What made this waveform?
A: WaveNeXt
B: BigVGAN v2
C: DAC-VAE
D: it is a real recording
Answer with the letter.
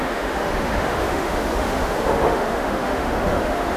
C